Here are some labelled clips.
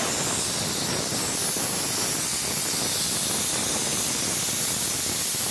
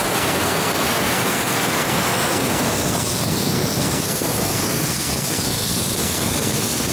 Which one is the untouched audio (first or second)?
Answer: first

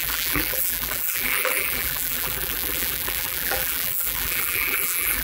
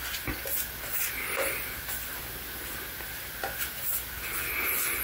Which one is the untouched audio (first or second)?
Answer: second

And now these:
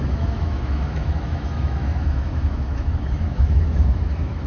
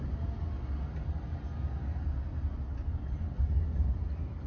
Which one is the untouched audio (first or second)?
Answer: second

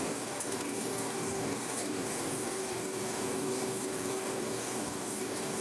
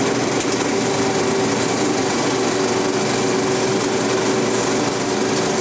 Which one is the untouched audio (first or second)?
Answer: second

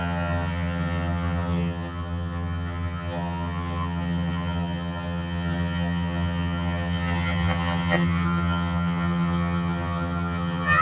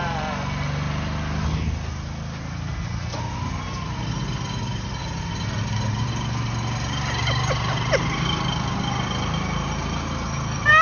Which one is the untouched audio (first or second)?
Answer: second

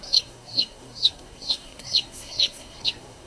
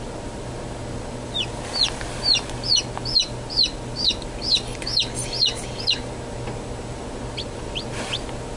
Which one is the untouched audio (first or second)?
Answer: second